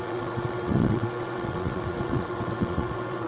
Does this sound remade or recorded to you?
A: remade